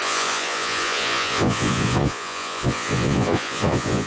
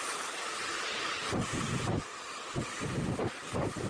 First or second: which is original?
second